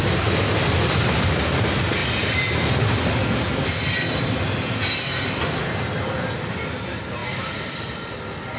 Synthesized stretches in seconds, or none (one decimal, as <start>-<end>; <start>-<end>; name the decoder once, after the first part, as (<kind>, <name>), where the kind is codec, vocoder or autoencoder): none